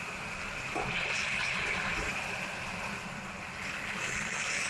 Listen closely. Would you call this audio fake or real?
fake